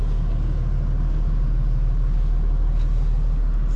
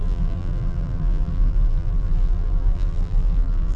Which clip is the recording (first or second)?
first